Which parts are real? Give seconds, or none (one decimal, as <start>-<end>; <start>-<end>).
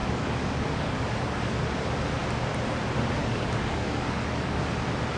1.6-3.2; 4.6-5.2